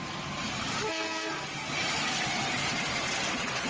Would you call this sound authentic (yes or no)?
yes